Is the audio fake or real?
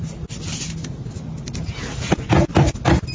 real